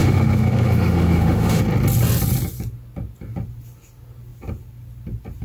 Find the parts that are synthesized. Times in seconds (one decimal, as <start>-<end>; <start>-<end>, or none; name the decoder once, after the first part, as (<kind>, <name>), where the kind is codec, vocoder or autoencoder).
0.0-1.6 (autoencoder, DAC-VAE)